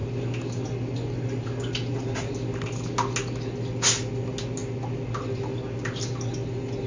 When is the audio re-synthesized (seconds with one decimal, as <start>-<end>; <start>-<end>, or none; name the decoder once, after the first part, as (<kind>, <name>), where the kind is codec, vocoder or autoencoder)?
none